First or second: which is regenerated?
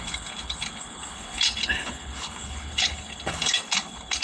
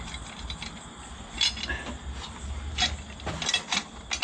first